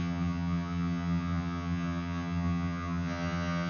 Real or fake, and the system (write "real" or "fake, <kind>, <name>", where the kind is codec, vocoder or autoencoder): fake, vocoder, HiFi-GAN